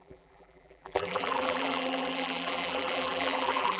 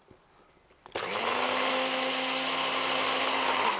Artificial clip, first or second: first